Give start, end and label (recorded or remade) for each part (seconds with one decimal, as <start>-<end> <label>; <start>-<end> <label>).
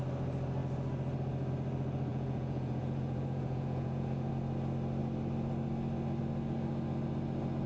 0.0-2.1 recorded; 2.1-4.3 remade; 4.3-7.7 recorded